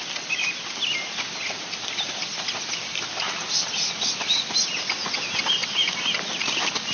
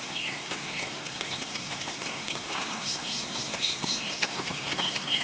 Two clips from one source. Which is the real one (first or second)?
first